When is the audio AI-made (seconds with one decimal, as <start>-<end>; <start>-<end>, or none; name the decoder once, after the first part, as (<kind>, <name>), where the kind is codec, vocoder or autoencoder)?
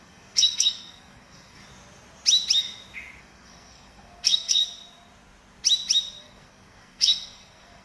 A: 0.0-1.6 (codec, SNAC); 3.2-4.6; 6.2-7.8